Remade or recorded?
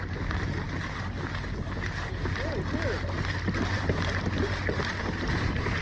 recorded